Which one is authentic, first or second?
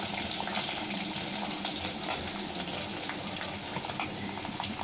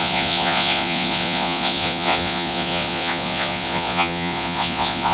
first